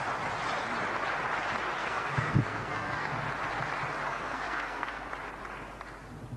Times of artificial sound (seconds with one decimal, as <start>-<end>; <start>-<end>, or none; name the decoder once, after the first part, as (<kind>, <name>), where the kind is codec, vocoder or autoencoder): 1.8-3.1 (codec, SNAC); 4.1-5.1